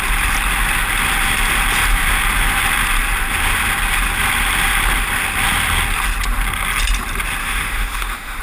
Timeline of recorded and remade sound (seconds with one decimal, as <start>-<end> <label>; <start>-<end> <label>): 0.0-7.4 recorded; 7.4-8.4 remade